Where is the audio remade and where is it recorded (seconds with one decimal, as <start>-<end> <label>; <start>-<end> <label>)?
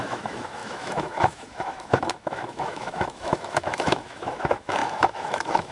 0.0-5.7 remade